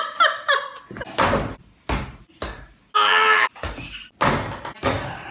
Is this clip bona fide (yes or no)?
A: yes